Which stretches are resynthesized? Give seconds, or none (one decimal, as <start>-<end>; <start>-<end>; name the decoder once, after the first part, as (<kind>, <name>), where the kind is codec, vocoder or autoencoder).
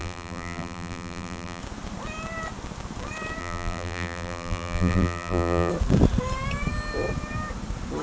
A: 0.0-1.6 (vocoder, BigVGAN v2); 3.4-5.7